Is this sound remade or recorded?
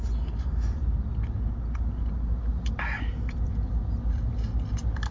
recorded